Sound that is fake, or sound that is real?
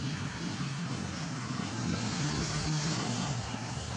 fake